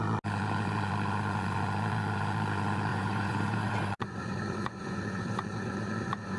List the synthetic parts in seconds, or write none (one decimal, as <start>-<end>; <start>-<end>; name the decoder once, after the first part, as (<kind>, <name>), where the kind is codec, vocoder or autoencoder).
2.9-6.4 (vocoder, Vocos)